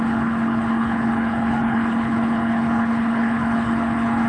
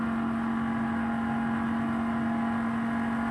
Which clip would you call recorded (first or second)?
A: second